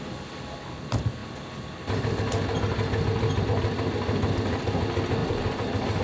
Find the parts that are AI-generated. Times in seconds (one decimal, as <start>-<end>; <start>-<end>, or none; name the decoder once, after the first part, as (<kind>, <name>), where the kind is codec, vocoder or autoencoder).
5.2-6.0 (vocoder, BigVGAN v2)